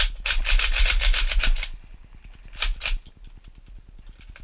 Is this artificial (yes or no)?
no